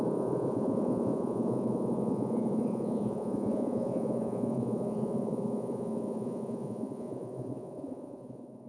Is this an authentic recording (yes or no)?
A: no